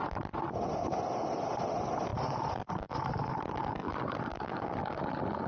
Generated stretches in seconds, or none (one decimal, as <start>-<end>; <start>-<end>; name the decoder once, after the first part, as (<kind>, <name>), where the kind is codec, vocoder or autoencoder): 4.3-5.0 (codec, DAC)